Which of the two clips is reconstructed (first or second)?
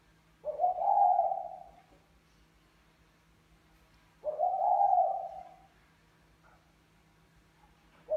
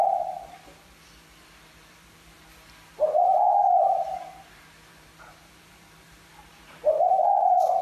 second